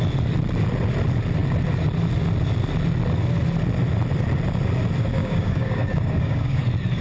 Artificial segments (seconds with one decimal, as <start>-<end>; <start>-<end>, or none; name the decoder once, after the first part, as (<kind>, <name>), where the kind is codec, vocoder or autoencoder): 5.2-6.6 (codec, DAC)

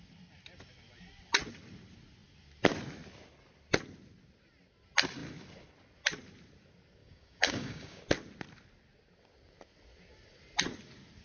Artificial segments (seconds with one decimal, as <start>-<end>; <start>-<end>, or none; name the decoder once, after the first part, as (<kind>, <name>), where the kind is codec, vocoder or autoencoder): 7.0-8.0 (codec, DAC)

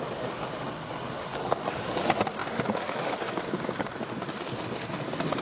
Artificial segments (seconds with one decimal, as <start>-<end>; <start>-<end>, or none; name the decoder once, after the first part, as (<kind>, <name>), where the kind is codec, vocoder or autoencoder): 1.3-2.0 (codec, DAC)